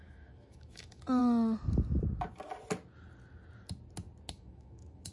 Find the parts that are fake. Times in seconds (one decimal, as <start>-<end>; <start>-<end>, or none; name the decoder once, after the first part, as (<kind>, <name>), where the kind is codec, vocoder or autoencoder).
0.0-1.2 (autoencoder, DAC-VAE); 4.3-5.1